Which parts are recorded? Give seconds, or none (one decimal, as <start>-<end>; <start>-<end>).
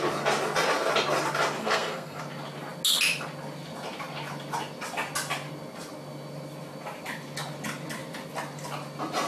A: 0.0-1.6; 2.2-9.3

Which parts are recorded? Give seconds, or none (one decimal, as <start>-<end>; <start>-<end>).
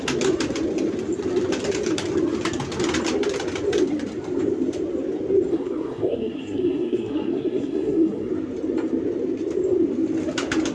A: 0.0-5.5; 8.3-10.7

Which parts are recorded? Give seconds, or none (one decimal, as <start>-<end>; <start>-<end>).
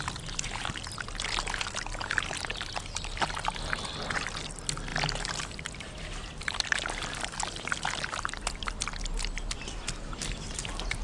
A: 0.0-11.0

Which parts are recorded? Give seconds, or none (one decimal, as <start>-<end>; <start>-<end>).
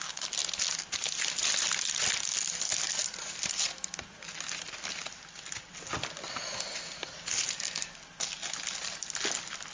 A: 0.0-9.7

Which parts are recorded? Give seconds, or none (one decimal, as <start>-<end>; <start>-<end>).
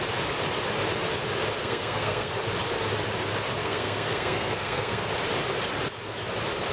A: 0.0-1.6; 2.3-3.6; 5.1-6.7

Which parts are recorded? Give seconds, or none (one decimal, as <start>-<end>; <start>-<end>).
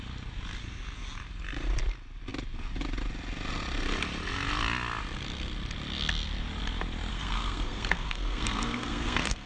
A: 0.0-7.1